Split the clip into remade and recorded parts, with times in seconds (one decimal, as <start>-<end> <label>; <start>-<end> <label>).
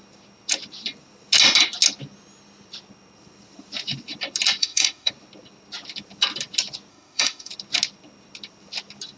0.0-4.6 recorded; 4.6-5.1 remade; 5.1-6.9 recorded; 6.9-7.5 remade; 7.5-9.2 recorded